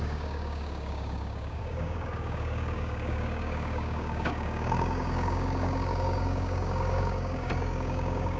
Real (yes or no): no